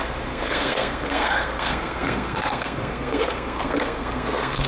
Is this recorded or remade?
remade